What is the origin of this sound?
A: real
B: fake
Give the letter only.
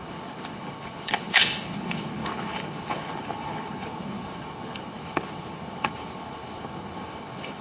B